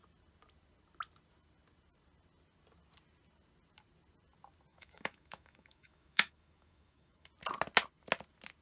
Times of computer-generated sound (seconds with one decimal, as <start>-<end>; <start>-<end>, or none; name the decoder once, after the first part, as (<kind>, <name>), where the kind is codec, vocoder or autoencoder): 4.7-7.3 (autoencoder, DAC-VAE)